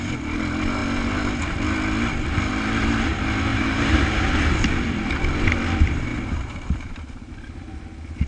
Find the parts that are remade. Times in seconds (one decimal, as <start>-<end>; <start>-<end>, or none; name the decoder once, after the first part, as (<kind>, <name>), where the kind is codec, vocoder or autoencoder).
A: 3.5-4.1 (vocoder, BigVGAN v2); 6.1-7.3